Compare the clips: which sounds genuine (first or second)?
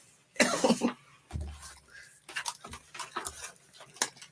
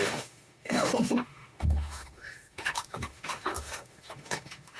first